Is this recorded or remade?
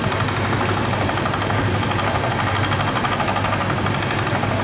recorded